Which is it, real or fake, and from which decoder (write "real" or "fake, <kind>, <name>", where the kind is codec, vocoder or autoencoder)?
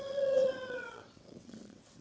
fake, vocoder, WaveNeXt